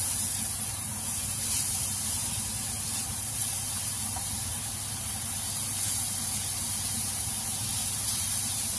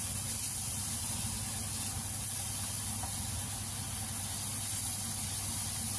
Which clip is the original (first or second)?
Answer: second